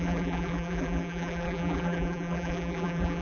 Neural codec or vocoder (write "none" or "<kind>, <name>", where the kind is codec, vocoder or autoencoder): vocoder, BigVGAN v2